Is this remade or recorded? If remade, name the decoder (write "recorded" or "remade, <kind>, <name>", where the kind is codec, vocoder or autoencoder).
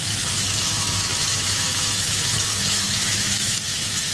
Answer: remade, autoencoder, DAC-VAE